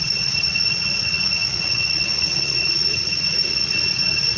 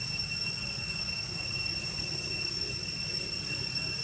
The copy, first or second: first